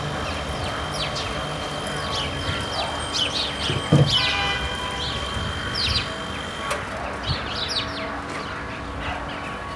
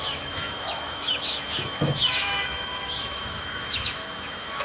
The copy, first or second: second